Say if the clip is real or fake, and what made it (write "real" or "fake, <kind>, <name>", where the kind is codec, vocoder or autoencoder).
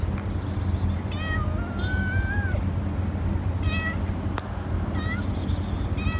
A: real